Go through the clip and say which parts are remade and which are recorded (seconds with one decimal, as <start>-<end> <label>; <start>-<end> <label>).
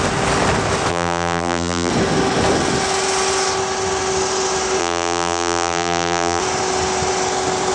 0.0-0.9 recorded; 0.9-1.9 remade; 1.9-4.8 recorded; 4.8-6.4 remade; 6.4-7.7 recorded